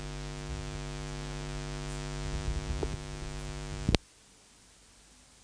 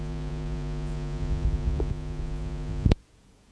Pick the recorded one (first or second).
first